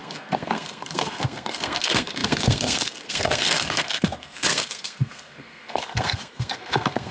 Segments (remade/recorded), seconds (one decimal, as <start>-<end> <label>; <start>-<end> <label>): 0.0-7.1 remade